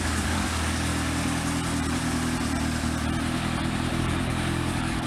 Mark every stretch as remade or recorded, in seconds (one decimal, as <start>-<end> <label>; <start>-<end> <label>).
0.0-0.9 remade; 0.9-4.0 recorded; 4.0-5.1 remade